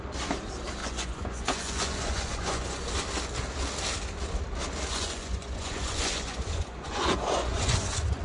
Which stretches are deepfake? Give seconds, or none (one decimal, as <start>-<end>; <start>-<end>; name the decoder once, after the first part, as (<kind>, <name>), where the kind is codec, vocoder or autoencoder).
0.8-2.9 (vocoder, Vocos); 4.9-8.2